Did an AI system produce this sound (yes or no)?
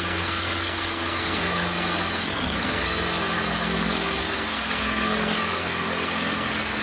yes